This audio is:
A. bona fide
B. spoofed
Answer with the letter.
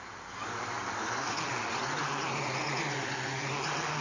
A